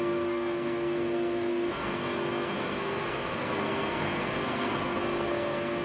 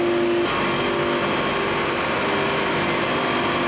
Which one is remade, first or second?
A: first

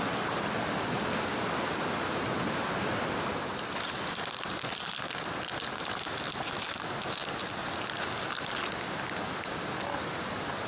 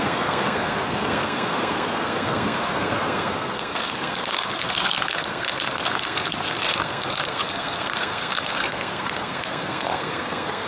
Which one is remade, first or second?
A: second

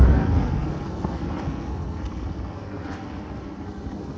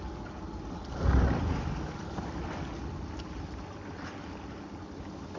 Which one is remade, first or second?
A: first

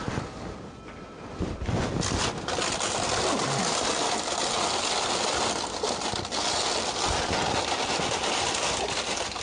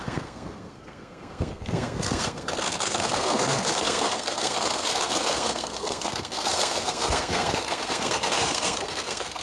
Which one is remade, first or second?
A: second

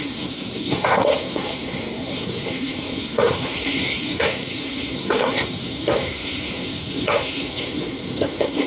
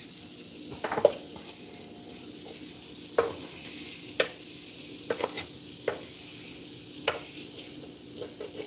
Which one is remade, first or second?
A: first